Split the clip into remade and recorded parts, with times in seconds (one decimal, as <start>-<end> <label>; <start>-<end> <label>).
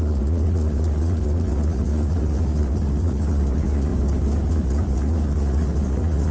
0.0-3.9 remade; 3.9-4.5 recorded; 4.5-6.3 remade